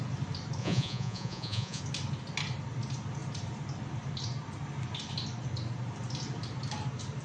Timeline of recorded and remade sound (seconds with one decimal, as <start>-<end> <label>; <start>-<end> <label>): 0.0-0.6 recorded; 0.6-1.8 remade; 1.8-7.2 recorded